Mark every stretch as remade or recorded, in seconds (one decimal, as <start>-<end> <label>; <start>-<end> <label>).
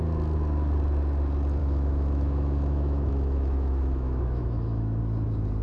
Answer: 0.0-1.6 recorded; 1.6-5.0 remade; 5.0-5.6 recorded